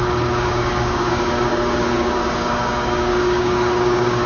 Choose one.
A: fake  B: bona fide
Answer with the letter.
A